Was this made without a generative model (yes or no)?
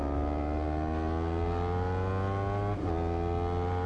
yes